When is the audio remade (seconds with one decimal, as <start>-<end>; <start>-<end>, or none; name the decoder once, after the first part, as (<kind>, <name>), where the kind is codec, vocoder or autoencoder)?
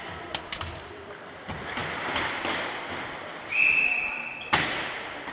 none